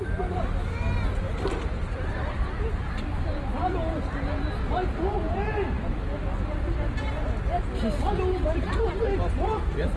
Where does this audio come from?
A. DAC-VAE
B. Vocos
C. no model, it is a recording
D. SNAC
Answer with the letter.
C